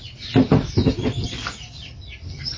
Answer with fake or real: fake